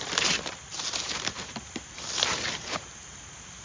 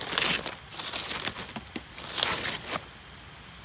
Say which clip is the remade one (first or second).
first